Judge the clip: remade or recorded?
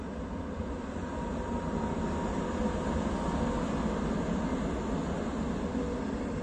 recorded